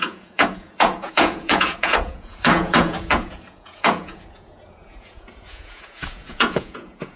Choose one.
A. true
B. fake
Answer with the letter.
B